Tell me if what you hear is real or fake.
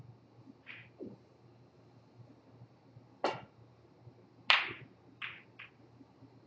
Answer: real